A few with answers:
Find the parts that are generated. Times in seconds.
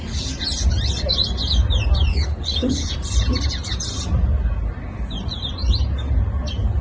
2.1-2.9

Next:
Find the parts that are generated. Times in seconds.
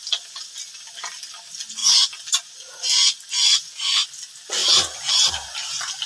none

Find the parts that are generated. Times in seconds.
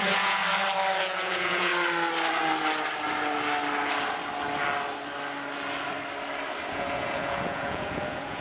0.0-0.4; 1.0-1.7; 6.7-8.4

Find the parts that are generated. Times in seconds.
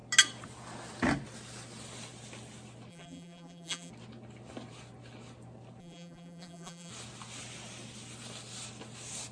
2.9-3.9; 5.8-6.9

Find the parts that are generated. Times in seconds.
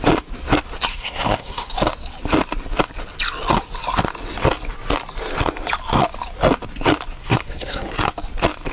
0.9-1.7; 7.2-7.9